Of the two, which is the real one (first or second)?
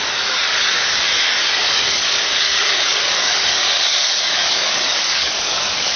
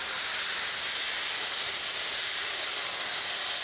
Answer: second